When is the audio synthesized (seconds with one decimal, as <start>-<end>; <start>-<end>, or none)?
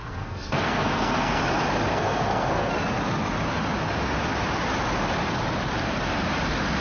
0.0-1.4; 1.9-2.7